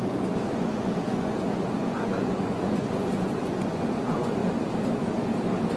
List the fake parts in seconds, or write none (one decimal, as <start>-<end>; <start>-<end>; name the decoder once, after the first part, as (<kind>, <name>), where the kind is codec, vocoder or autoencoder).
0.0-4.4 (vocoder, Vocos)